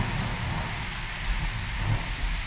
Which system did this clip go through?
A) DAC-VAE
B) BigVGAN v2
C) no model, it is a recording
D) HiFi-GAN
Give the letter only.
C